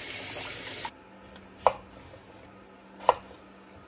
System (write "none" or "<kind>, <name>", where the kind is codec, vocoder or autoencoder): none